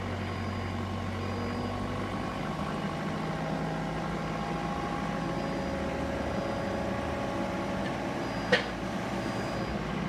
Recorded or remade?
recorded